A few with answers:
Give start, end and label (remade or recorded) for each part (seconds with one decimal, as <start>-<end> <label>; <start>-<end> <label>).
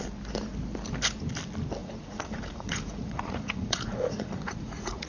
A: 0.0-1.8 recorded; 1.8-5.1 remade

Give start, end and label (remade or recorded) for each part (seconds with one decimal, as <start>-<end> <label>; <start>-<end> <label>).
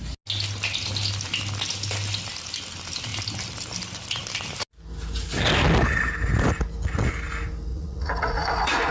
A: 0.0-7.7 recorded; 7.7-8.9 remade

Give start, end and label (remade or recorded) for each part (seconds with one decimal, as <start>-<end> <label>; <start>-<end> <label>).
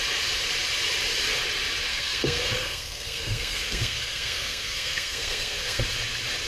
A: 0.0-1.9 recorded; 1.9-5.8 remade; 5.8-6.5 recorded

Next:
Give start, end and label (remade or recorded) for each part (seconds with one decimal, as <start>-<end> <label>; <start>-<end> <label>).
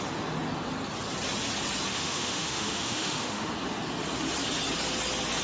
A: 0.0-1.9 recorded; 1.9-3.5 remade; 3.5-5.4 recorded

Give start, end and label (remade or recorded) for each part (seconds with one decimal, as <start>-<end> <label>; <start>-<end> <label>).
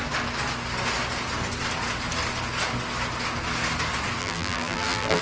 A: 0.0-4.2 recorded; 4.2-5.2 remade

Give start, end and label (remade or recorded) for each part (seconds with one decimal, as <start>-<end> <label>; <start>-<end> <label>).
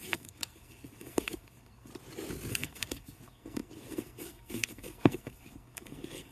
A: 0.0-1.9 remade; 1.9-2.5 recorded; 2.5-6.3 remade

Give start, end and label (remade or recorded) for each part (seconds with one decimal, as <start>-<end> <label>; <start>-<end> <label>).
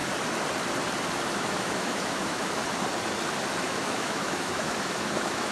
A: 0.0-1.3 recorded; 1.3-2.6 remade; 2.6-3.6 recorded; 3.6-5.5 remade